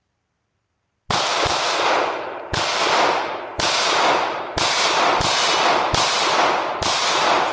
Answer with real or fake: real